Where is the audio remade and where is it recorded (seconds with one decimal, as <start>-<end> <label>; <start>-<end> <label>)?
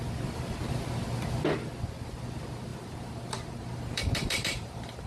0.0-2.7 recorded; 2.7-5.1 remade